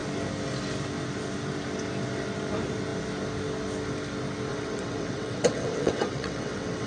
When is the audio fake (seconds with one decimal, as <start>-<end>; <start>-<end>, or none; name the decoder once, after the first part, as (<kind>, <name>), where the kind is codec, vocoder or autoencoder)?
4.5-6.9 (vocoder, WaveNeXt)